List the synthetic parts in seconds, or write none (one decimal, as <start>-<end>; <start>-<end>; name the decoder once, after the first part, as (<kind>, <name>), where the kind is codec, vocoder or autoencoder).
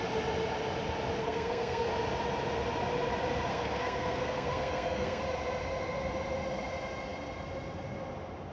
1.2-1.9 (codec, SNAC); 3.5-5.2